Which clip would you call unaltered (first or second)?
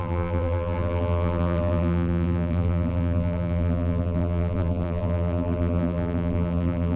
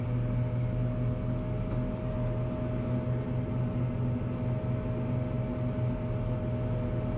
second